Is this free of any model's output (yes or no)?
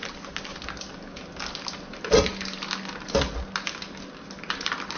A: yes